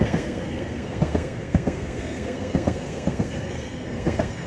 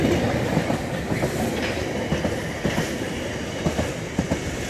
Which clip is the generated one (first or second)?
first